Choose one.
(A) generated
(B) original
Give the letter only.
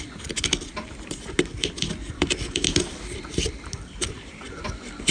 B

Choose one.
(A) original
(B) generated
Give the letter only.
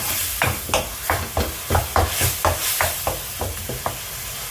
A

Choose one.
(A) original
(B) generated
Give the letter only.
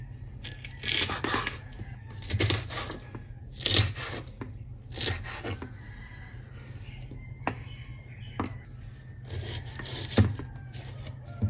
A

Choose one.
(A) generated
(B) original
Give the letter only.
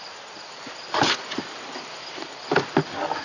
B